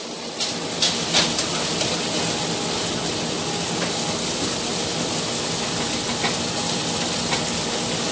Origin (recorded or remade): recorded